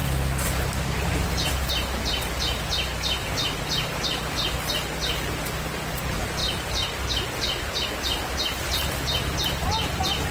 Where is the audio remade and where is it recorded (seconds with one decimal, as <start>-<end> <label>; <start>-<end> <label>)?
0.0-10.3 recorded